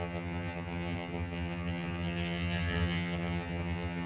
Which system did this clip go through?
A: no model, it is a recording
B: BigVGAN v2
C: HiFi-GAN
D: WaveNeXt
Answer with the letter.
C